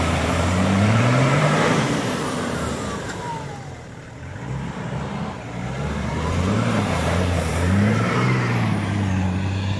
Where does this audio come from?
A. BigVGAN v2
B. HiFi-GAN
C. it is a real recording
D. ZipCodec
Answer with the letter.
A